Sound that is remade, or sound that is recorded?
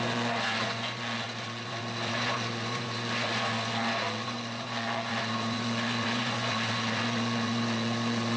remade